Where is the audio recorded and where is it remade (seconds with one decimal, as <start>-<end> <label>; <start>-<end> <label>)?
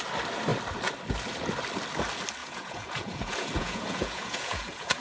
0.0-2.4 recorded; 2.4-5.0 remade